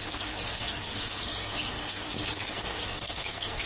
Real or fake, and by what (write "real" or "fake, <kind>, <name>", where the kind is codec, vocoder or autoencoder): fake, codec, SNAC